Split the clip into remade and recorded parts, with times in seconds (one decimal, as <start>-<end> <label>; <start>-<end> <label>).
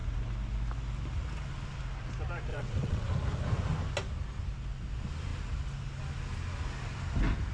0.0-2.5 recorded; 2.5-3.1 remade; 3.1-7.5 recorded